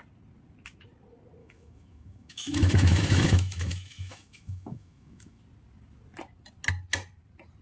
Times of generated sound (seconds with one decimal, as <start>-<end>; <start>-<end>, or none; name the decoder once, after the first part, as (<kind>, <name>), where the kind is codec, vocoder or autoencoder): 1.4-5.4 (autoencoder, DAC-VAE)